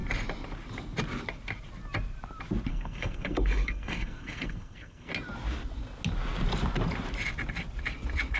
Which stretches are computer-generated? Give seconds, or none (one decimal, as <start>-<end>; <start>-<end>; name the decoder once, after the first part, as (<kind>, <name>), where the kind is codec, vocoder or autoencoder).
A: 2.7-5.1 (codec, SNAC)